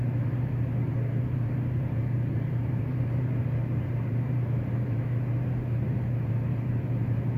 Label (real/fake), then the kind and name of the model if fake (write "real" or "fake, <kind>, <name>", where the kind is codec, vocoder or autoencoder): fake, vocoder, BigVGAN v2